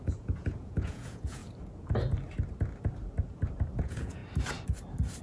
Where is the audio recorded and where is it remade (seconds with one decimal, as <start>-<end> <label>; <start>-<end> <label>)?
0.0-1.4 remade; 1.4-3.8 recorded; 3.8-4.2 remade; 4.2-5.2 recorded